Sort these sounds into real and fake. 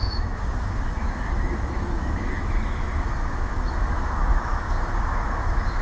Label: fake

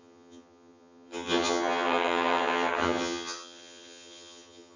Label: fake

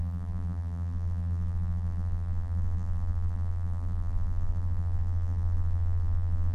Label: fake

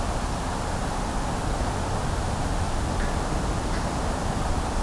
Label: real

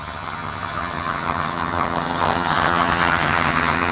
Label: fake